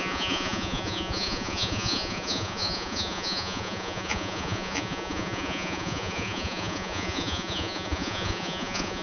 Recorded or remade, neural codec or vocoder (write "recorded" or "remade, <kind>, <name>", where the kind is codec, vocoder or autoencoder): remade, vocoder, Vocos